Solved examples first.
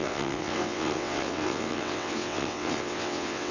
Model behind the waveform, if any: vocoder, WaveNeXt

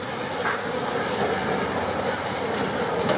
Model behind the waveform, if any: none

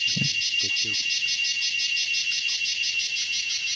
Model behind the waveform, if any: none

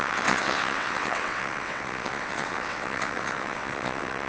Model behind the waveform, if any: vocoder, WaveNeXt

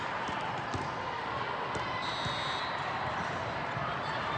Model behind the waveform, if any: none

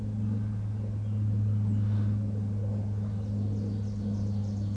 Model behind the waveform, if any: none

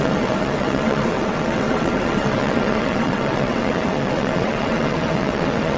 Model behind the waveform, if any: vocoder, WaveNeXt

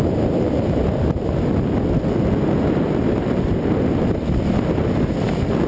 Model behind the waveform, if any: none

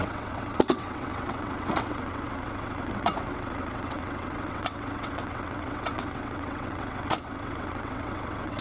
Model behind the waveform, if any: vocoder, WaveNeXt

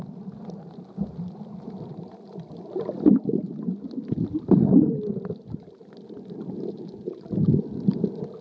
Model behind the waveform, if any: none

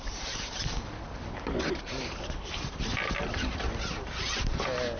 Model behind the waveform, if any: none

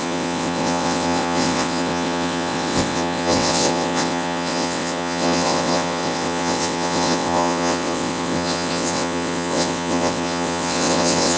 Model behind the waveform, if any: vocoder, WaveNeXt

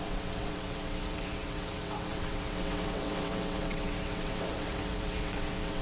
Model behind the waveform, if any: vocoder, WaveNeXt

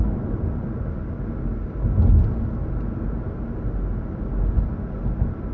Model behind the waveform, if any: none